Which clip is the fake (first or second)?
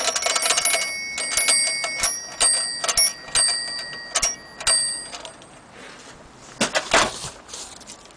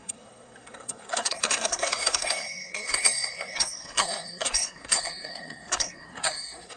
second